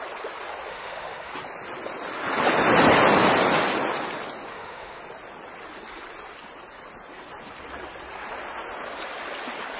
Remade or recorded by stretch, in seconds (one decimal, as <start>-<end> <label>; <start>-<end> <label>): 0.0-0.7 recorded; 0.7-1.3 remade; 1.3-4.5 recorded; 4.5-5.0 remade; 5.0-9.8 recorded

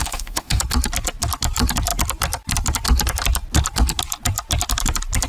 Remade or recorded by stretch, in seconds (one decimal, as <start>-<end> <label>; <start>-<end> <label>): 0.0-0.6 remade; 0.6-5.3 recorded

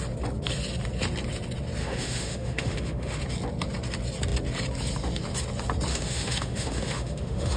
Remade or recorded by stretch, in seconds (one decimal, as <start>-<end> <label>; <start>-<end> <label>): 0.0-1.8 recorded; 1.8-3.2 remade; 3.2-5.9 recorded; 5.9-7.6 remade

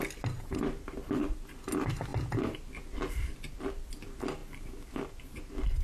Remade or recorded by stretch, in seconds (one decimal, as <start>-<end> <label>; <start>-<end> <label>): 0.0-5.8 recorded

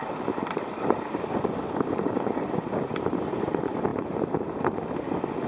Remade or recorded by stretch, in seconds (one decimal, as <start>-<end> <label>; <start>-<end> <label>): 0.0-5.5 recorded

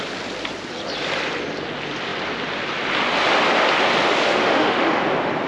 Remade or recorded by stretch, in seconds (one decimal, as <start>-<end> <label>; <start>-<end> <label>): 0.0-4.4 recorded; 4.4-5.0 remade; 5.0-5.5 recorded

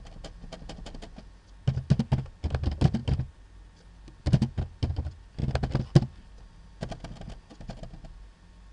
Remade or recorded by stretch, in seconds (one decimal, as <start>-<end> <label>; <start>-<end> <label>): 0.0-8.7 recorded